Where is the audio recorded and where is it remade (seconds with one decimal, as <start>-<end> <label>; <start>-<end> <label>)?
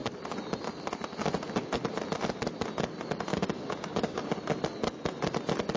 0.0-3.3 recorded; 3.3-4.2 remade; 4.2-5.8 recorded